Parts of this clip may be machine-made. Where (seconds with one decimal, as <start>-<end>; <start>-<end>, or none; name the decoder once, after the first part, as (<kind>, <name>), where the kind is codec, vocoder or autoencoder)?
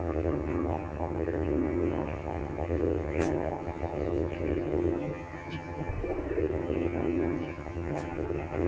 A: 0.0-5.9 (vocoder, HiFi-GAN); 6.4-8.7